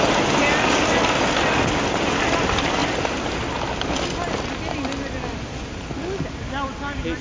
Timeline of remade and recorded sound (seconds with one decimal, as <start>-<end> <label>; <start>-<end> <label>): 0.0-7.2 recorded